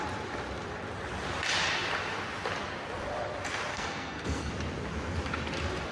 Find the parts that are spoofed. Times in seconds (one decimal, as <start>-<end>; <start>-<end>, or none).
3.7-4.5